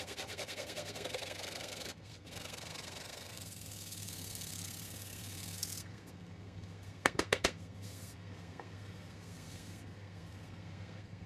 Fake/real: fake